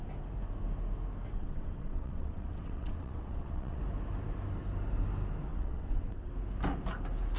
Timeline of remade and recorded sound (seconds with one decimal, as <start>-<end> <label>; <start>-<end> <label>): 0.0-1.3 recorded; 1.3-3.8 remade; 3.8-5.5 recorded; 5.5-6.3 remade; 6.3-7.4 recorded